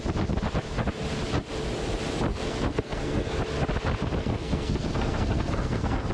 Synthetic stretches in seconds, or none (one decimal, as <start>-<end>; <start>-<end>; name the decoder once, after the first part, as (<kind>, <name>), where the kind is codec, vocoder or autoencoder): 2.3-3.4 (codec, SNAC); 4.2-6.1